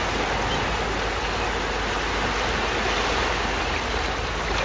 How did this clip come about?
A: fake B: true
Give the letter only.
B